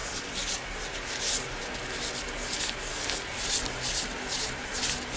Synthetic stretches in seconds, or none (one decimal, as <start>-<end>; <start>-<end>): 2.9-3.4